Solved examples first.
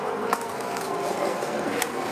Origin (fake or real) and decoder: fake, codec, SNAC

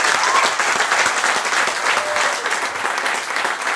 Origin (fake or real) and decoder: real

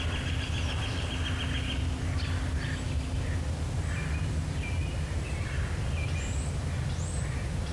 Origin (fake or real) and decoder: real